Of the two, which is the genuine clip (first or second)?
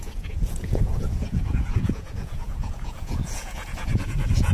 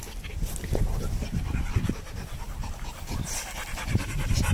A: second